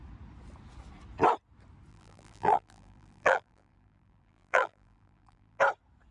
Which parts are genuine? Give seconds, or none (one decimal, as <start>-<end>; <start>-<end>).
0.0-1.9; 5.6-6.1